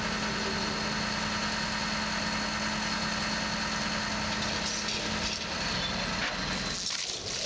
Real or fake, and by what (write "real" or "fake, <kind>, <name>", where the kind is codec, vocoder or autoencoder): real